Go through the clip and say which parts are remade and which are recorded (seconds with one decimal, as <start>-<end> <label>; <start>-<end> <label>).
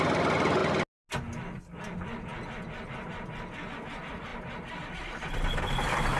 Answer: 0.0-6.2 recorded